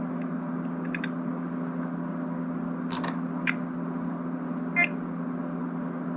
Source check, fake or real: real